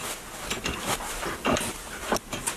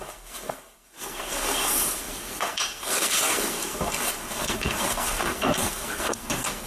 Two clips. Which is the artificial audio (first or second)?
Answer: second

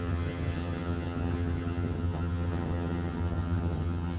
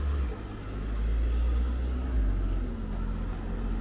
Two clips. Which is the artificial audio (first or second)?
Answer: first